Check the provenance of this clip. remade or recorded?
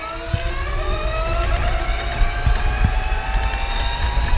recorded